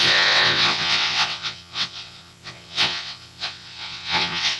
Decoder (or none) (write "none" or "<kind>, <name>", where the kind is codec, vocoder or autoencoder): vocoder, WaveNeXt